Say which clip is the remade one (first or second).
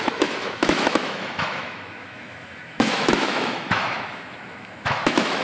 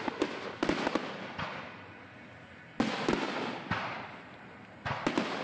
first